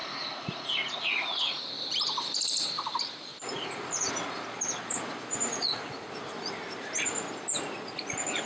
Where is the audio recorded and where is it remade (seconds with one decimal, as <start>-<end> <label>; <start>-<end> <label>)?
0.0-1.6 remade; 1.6-3.3 recorded; 3.3-4.1 remade; 4.1-5.5 recorded; 5.5-6.1 remade; 6.1-8.5 recorded